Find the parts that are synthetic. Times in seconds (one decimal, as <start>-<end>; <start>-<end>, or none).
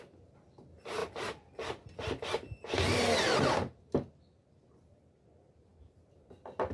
none